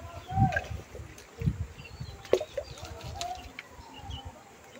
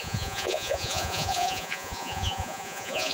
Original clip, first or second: first